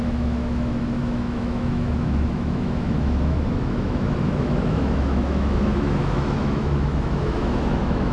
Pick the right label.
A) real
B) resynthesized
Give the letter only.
B